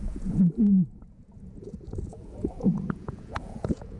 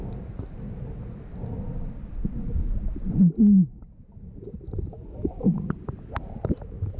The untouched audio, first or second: second